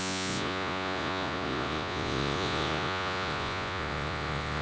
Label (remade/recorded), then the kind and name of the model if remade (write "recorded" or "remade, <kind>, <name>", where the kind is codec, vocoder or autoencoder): remade, vocoder, Vocos